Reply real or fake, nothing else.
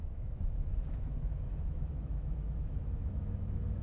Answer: fake